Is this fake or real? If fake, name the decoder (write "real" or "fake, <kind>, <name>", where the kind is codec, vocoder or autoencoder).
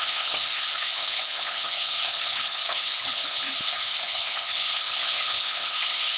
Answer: fake, codec, HILCodec